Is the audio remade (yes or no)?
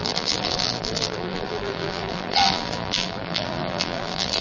yes